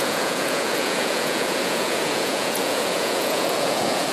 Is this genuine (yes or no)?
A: no